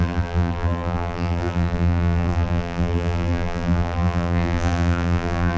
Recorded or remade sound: remade